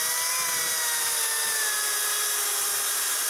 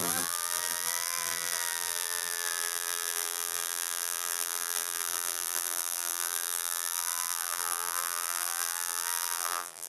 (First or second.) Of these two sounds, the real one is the first